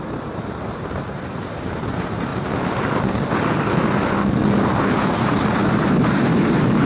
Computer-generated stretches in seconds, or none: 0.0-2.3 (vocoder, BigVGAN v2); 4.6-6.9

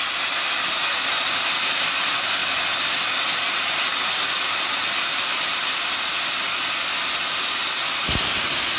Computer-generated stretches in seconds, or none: none

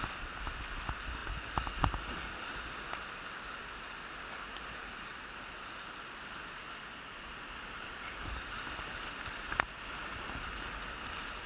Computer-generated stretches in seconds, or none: none

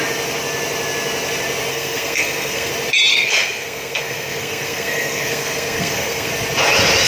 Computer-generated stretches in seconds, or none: 1.7-2.7 (codec, SNAC); 3.1-6.3

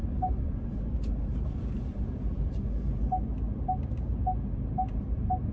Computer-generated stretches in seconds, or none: 0.0-3.3 (vocoder, BigVGAN v2); 4.1-5.5

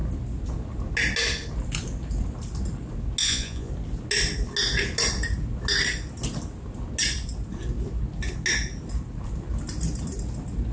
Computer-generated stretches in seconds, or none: 3.2-3.7 (vocoder, Vocos)